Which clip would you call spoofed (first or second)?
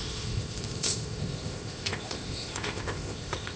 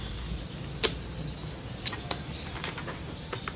first